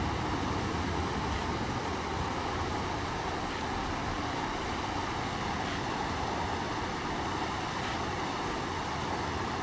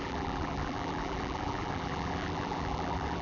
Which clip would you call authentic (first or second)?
first